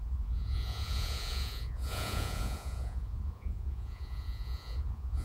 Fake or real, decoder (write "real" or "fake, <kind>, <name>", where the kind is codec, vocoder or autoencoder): fake, vocoder, Vocos